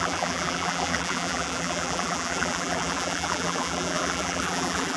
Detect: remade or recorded remade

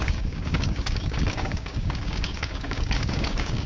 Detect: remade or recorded remade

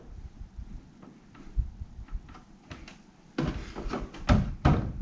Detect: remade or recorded recorded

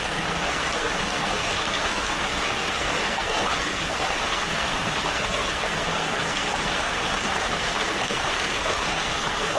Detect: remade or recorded remade